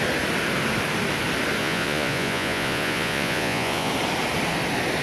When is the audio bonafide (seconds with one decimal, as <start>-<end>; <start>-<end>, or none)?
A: 0.0-1.6; 3.9-5.0